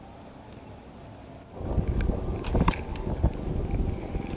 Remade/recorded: recorded